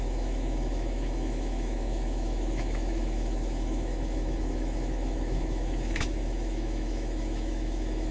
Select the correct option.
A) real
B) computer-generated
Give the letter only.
B